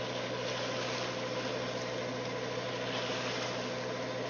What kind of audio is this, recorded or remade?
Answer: recorded